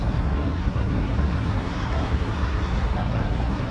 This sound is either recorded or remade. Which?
remade